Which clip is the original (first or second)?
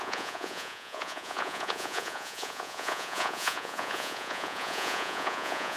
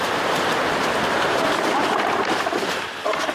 second